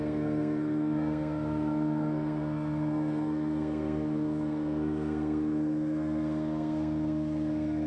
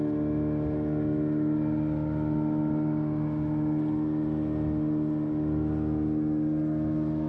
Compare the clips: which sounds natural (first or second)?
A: second